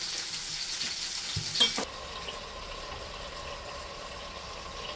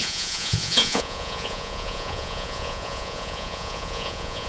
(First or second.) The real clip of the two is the first